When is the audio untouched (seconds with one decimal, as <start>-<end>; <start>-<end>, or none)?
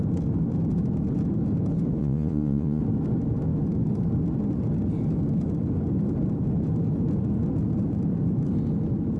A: 0.0-2.0; 2.8-9.2